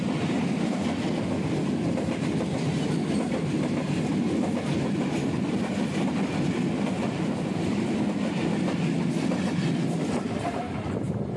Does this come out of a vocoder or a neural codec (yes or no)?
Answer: no